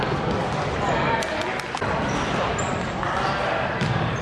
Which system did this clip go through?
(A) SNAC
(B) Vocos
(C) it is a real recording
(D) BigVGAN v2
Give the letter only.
C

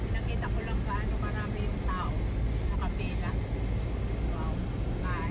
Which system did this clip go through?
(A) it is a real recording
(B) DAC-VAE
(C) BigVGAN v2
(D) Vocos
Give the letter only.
A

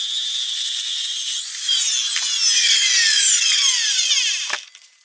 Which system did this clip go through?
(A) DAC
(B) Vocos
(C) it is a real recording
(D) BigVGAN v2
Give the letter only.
C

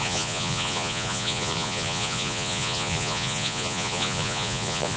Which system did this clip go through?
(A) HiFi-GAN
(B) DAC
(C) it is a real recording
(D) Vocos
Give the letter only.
D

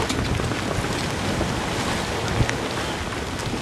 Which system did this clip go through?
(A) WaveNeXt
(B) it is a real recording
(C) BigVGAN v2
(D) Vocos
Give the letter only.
B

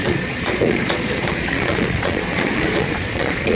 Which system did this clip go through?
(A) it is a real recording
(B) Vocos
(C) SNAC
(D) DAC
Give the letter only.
B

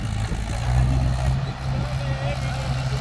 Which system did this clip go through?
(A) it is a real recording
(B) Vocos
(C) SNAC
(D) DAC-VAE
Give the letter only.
A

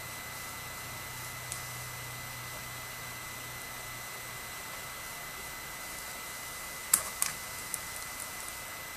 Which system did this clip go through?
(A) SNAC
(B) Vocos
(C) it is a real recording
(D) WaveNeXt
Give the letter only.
C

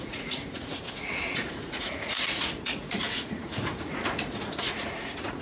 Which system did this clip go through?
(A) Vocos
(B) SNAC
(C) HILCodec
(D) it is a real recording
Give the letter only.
A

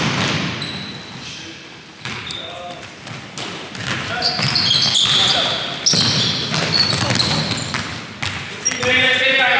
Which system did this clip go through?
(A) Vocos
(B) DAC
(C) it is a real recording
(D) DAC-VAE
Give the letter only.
C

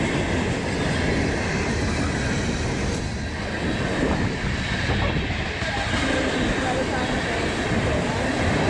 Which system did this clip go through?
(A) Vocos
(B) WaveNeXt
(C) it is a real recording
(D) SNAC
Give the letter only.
C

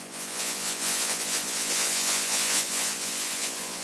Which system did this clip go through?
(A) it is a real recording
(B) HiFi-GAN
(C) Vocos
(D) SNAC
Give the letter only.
C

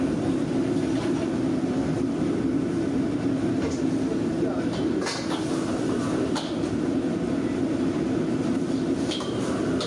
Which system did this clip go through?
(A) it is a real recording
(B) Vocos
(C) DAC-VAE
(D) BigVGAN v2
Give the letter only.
A